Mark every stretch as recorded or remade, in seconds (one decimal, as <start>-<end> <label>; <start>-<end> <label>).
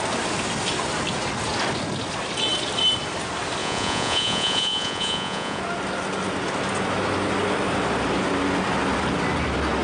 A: 0.0-3.6 recorded; 3.6-5.6 remade; 5.6-9.8 recorded